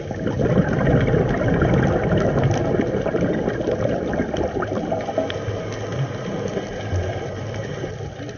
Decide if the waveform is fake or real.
real